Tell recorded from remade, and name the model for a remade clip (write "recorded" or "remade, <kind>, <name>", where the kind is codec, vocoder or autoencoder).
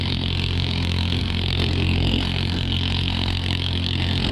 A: remade, codec, SNAC